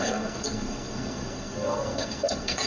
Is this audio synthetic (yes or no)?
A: yes